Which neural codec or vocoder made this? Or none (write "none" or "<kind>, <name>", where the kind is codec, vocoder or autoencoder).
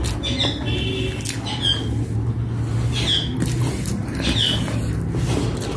none